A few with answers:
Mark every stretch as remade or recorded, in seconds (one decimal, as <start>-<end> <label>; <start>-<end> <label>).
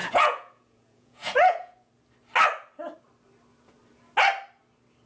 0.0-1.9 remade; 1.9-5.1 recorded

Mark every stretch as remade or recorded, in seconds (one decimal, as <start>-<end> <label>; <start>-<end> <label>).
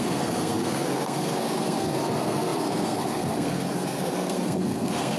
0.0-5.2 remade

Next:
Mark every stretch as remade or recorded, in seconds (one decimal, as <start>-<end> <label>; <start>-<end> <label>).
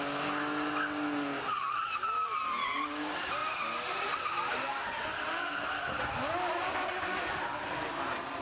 0.0-8.4 recorded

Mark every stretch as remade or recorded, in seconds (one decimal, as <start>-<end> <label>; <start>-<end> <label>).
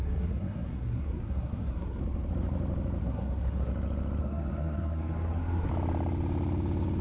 0.0-2.0 remade; 2.0-3.0 recorded; 3.0-3.7 remade; 3.7-4.2 recorded; 4.2-5.7 remade; 5.7-7.0 recorded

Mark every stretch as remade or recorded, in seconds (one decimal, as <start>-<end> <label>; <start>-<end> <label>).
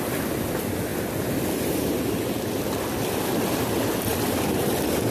0.0-0.9 recorded; 0.9-3.2 remade; 3.2-4.1 recorded; 4.1-5.1 remade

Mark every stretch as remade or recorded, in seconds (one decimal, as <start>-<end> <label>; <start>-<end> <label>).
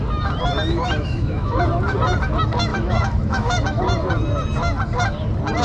0.0-0.7 recorded; 0.7-1.6 remade; 1.6-2.7 recorded; 2.7-3.8 remade; 3.8-5.6 recorded